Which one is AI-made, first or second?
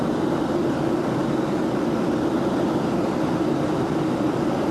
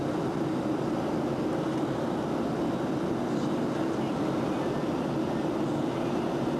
first